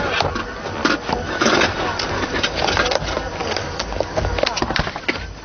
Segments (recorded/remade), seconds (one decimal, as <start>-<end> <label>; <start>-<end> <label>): 0.0-3.4 recorded; 3.4-4.3 remade; 4.3-5.4 recorded